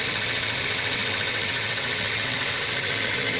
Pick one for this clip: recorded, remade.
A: remade